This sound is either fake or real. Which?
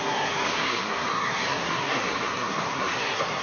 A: fake